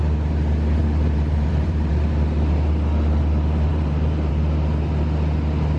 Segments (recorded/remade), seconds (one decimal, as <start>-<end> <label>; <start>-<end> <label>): 0.0-0.8 recorded; 0.8-1.9 remade; 1.9-3.7 recorded; 3.7-4.3 remade; 4.3-5.8 recorded